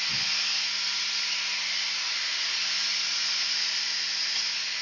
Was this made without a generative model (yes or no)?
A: yes